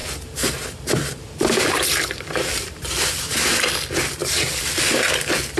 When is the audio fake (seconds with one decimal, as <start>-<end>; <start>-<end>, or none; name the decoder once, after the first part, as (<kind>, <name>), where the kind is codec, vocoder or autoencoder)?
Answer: 0.0-3.3 (vocoder, BigVGAN v2); 4.2-4.7